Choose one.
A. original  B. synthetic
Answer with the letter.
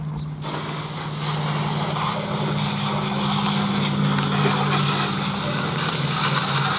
A